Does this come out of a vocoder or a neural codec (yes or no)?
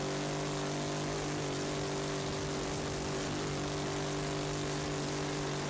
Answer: no